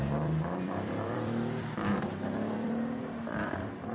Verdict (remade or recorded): remade